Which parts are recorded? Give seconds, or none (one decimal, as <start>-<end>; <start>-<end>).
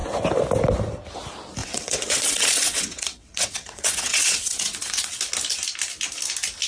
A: 0.0-1.6; 5.2-6.7